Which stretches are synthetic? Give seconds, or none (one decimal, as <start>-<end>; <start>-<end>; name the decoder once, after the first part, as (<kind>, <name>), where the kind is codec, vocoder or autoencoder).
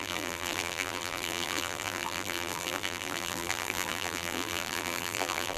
0.0-5.6 (vocoder, BigVGAN v2)